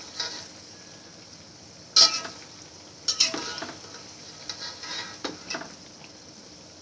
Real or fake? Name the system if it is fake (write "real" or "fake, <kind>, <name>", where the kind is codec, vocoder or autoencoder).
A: real